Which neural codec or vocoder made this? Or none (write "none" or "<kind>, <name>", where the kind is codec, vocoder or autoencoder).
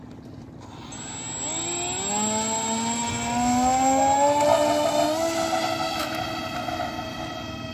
none